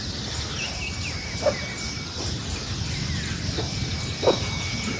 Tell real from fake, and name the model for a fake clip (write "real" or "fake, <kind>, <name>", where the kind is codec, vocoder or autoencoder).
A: fake, vocoder, BigVGAN v2